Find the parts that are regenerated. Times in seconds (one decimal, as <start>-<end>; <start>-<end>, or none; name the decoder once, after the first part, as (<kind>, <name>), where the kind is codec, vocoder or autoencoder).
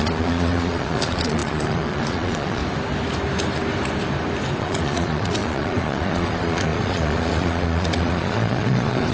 0.0-2.6 (vocoder, Vocos); 4.6-9.1